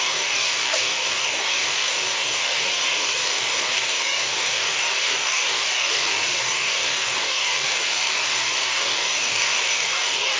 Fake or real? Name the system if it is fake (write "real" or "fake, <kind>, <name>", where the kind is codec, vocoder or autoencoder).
fake, codec, DAC